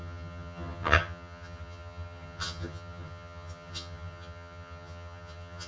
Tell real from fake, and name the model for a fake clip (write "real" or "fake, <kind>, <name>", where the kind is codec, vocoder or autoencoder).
fake, vocoder, HiFi-GAN